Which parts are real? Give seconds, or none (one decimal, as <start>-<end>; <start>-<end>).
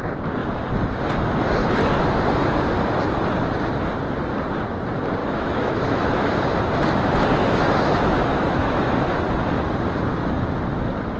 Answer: 0.0-5.2; 6.3-7.4; 9.2-11.2